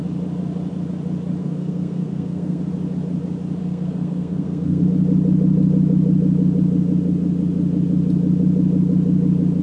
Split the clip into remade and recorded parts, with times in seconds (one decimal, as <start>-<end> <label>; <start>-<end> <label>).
0.0-1.4 recorded; 1.4-2.6 remade; 2.6-3.6 recorded; 3.6-4.8 remade; 4.8-9.6 recorded